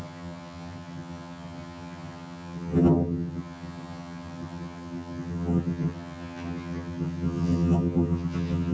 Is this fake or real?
fake